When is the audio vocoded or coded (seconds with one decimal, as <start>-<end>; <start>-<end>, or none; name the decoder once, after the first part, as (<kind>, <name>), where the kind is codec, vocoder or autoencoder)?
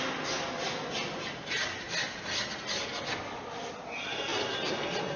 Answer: none